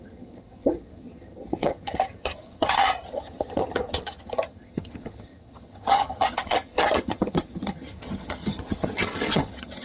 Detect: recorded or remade remade